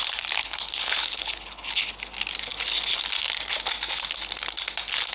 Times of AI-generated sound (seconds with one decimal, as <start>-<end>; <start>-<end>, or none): 0.4-1.9